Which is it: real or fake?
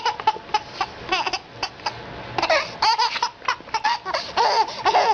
real